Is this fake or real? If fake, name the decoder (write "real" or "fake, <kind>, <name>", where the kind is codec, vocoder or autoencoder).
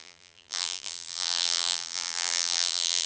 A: fake, vocoder, BigVGAN v2